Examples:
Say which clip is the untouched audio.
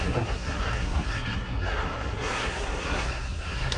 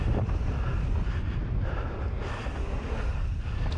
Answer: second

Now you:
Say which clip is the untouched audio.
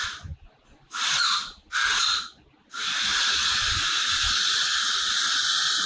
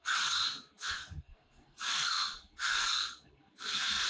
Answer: first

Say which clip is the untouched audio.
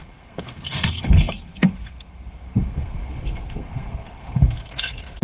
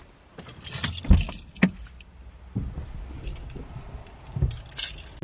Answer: second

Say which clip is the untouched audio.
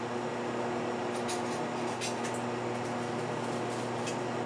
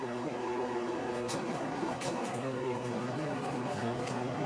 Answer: first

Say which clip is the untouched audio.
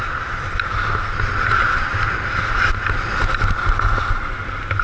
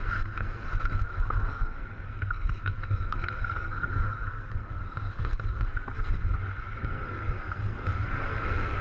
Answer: first